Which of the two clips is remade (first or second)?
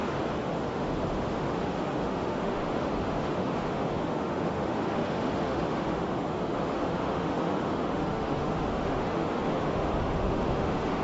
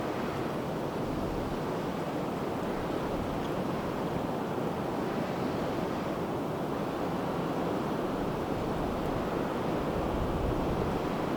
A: first